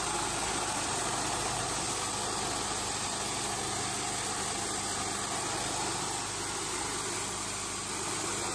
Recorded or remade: recorded